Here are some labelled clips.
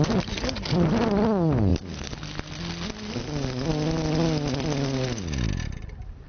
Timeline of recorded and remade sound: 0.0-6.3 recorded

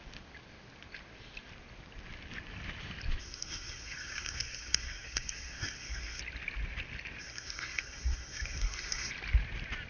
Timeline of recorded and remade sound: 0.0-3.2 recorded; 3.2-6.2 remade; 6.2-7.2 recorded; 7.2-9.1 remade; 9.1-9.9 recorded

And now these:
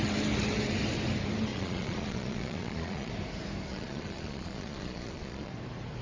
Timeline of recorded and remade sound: 0.0-1.5 recorded; 1.5-3.1 remade; 3.1-3.7 recorded; 3.7-5.5 remade; 5.5-6.0 recorded

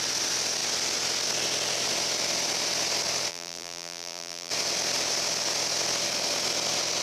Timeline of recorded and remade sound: 0.0-3.3 recorded; 3.3-4.5 remade; 4.5-7.0 recorded

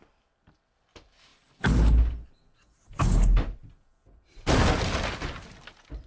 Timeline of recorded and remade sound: 0.0-6.1 recorded

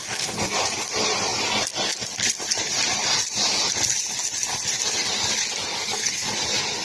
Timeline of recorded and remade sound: 0.0-5.7 recorded; 5.7-6.3 remade; 6.3-6.8 recorded

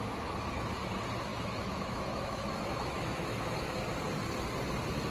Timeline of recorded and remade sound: 0.0-1.3 recorded; 1.3-3.8 remade; 3.8-5.1 recorded

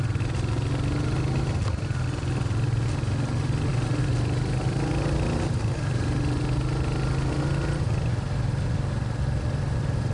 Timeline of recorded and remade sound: 0.0-10.1 recorded